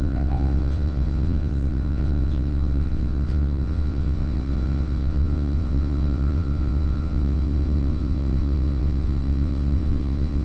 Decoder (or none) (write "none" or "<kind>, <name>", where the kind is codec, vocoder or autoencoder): vocoder, WaveNeXt